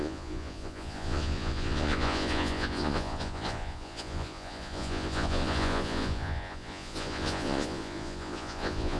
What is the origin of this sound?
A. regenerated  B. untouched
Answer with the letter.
A